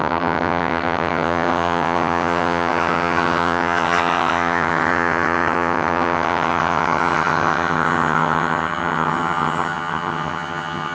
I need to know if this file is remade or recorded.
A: remade